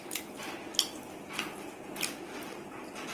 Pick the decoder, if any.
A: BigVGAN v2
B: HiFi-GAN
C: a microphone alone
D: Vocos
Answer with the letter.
C